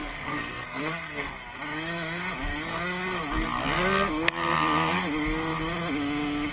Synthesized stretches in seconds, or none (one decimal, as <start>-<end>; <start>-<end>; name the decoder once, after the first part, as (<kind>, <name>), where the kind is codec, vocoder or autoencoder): 0.0-1.3 (codec, SNAC)